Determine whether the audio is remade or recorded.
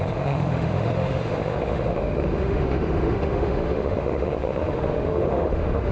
remade